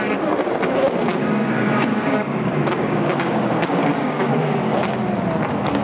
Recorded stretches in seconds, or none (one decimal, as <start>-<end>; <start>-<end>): 0.0-1.2; 4.7-5.8